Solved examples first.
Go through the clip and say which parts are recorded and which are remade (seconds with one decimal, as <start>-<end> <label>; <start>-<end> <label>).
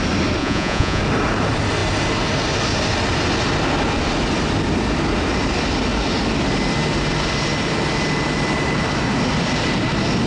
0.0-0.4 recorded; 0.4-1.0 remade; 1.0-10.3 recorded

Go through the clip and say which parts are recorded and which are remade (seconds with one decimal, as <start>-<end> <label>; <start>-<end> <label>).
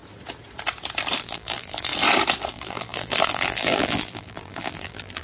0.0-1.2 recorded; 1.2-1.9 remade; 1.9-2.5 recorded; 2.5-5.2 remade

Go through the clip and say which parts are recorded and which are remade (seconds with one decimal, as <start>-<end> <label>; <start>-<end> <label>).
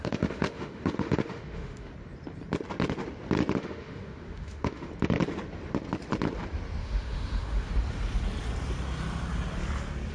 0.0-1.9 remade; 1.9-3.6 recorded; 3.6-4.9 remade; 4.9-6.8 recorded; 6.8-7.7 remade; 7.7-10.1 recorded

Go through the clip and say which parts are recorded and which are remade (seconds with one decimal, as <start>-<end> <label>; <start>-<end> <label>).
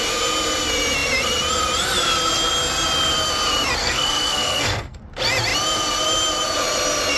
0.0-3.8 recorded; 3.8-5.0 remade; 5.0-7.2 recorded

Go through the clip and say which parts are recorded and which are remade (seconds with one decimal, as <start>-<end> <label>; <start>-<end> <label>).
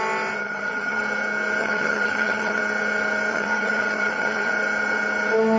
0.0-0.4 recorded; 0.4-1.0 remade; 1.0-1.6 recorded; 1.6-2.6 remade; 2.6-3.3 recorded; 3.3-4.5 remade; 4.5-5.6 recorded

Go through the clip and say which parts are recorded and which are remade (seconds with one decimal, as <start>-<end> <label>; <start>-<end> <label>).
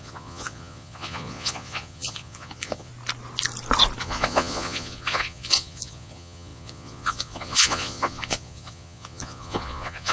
0.0-2.9 remade; 2.9-4.0 recorded; 4.0-10.1 remade